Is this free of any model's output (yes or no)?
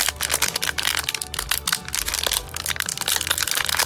yes